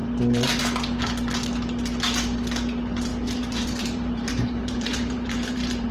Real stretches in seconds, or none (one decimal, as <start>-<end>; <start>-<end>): 0.0-3.1